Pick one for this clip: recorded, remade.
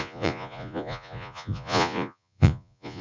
remade